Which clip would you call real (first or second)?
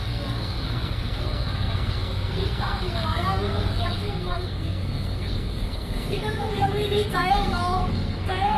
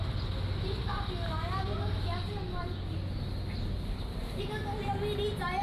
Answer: second